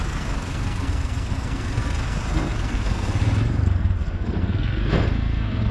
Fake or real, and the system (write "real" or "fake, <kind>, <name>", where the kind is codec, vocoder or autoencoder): fake, codec, SNAC